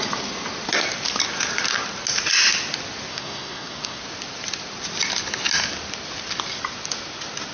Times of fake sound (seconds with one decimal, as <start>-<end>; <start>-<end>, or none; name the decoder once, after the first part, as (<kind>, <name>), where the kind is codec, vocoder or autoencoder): 3.1-4.0 (codec, SNAC)